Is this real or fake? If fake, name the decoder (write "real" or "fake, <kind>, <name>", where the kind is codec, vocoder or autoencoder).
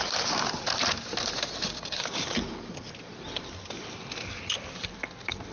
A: real